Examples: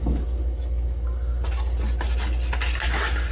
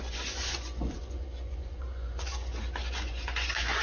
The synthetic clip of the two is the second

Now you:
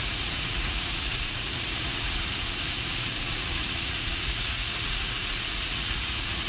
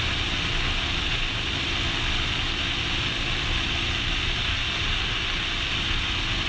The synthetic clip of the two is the first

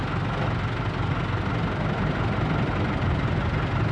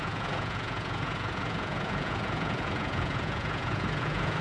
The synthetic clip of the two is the second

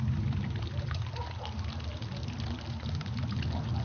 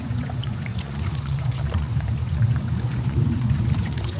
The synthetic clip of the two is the second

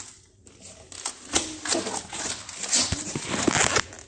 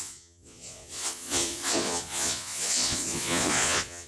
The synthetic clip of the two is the second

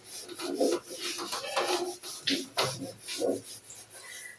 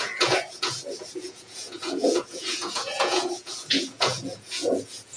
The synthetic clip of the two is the second